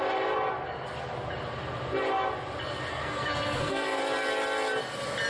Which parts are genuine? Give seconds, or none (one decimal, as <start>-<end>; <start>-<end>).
0.0-2.9; 4.0-5.3